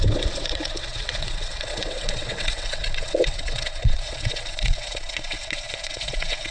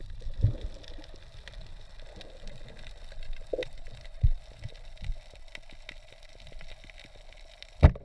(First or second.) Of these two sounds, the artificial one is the first